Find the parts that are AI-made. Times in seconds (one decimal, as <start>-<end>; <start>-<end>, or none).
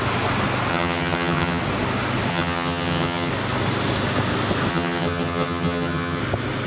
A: 0.7-1.6; 2.3-3.3; 4.7-6.2